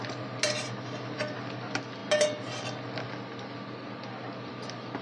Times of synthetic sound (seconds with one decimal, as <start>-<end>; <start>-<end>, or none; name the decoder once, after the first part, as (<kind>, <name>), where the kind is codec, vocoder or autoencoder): none